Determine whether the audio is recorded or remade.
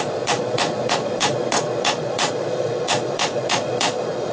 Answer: remade